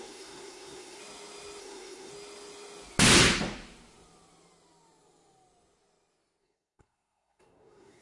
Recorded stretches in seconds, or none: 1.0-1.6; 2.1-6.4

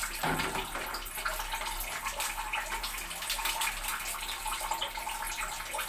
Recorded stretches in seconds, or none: 0.0-5.9

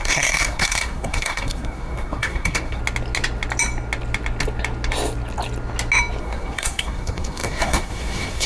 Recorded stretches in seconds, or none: 2.8-6.2